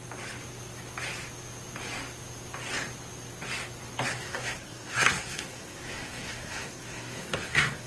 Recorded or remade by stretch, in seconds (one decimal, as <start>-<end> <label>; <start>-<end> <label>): 0.0-4.1 recorded; 4.1-7.9 remade